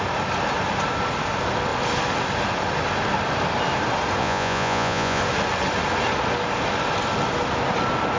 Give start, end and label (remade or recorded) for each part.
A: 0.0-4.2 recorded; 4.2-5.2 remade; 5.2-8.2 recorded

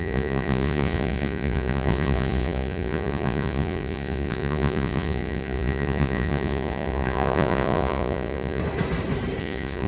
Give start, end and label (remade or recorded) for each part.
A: 0.0-8.6 remade; 8.6-9.4 recorded; 9.4-9.9 remade

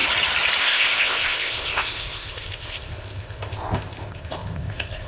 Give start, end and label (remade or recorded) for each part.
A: 0.0-0.6 recorded; 0.6-5.1 remade

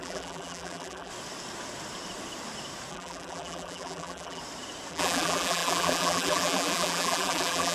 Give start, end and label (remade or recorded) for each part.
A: 0.0-1.1 remade; 1.1-2.9 recorded; 2.9-4.4 remade; 4.4-4.9 recorded; 4.9-7.7 remade

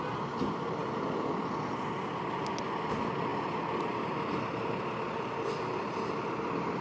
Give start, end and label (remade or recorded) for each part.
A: 0.0-6.8 recorded